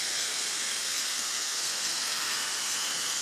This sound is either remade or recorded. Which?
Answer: remade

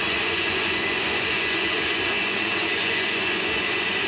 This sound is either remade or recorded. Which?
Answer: remade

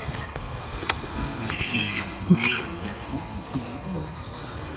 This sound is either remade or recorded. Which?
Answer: remade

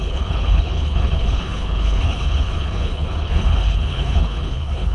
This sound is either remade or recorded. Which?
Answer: remade